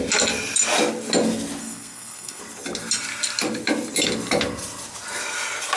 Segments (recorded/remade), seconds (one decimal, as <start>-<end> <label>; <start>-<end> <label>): 0.0-1.6 recorded; 1.6-2.4 remade; 2.4-5.8 recorded